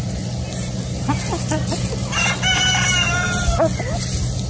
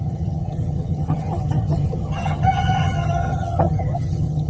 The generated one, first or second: second